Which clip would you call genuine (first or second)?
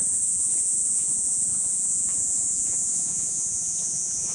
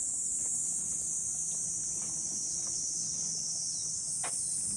second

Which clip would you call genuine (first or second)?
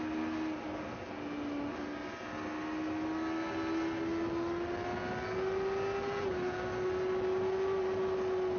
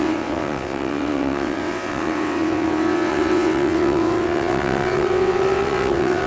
first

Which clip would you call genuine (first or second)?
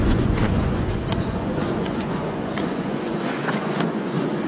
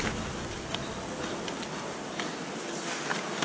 second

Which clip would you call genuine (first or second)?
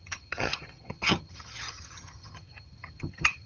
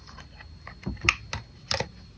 second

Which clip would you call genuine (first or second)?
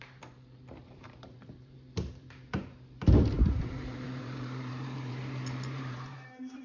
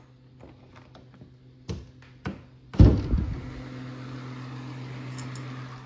second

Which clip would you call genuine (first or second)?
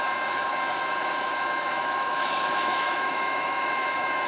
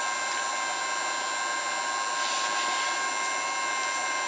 second